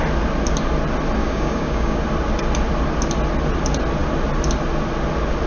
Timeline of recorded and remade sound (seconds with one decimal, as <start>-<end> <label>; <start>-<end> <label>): 0.0-1.2 recorded; 1.2-2.0 remade; 2.0-5.5 recorded